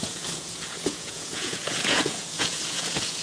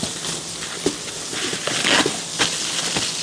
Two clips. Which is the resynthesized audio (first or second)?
first